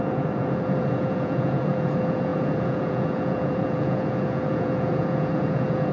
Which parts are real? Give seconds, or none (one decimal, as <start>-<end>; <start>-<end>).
none